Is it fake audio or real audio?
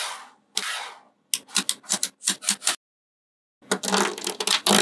real